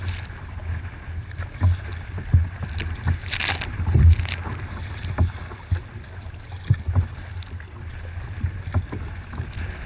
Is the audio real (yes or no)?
yes